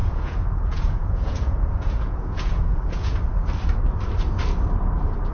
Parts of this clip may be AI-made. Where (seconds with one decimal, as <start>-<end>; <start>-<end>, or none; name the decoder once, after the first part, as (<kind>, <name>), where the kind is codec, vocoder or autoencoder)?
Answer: 0.0-3.2 (vocoder, Vocos)